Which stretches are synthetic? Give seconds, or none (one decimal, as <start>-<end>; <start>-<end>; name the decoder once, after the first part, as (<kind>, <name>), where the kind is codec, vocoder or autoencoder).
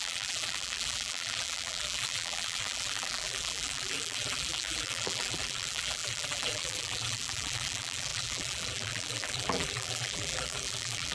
0.0-11.1 (vocoder, BigVGAN v2)